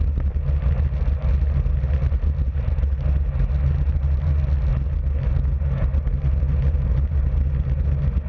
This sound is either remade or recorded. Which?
recorded